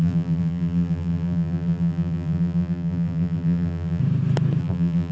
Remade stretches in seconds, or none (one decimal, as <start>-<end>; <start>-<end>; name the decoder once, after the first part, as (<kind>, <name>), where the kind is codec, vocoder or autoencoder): 0.0-4.0 (vocoder, BigVGAN v2); 4.6-5.1